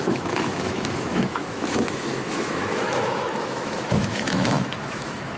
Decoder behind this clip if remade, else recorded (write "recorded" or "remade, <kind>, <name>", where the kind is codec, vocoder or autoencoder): remade, autoencoder, DAC-VAE